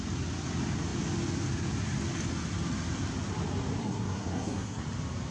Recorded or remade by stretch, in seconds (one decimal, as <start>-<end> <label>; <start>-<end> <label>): 0.0-3.8 recorded; 3.8-4.8 remade; 4.8-5.3 recorded